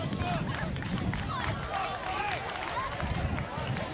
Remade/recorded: recorded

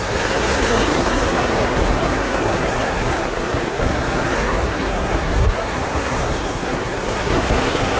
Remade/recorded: remade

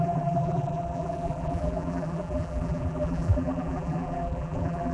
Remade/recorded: remade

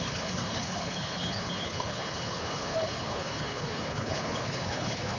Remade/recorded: remade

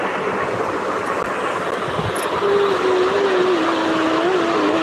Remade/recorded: recorded